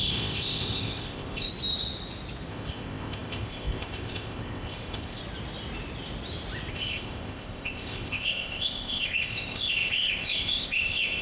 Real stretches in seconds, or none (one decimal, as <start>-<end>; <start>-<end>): 1.5-2.5; 5.2-6.7